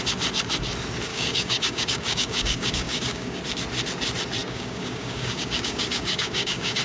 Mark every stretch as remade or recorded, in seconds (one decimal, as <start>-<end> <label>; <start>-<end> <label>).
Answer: 0.0-1.1 recorded; 1.1-3.4 remade; 3.4-4.4 recorded; 4.4-6.8 remade